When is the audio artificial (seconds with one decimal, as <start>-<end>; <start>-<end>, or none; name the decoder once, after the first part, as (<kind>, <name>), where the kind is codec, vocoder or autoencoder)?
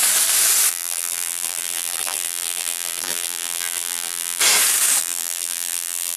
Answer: 0.7-4.4 (vocoder, BigVGAN v2); 5.0-6.2